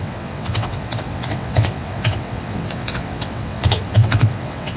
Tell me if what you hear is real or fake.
fake